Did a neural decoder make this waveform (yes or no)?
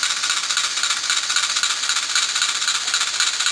no